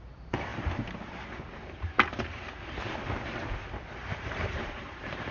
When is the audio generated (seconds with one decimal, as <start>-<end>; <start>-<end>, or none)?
0.0-2.8; 4.1-5.3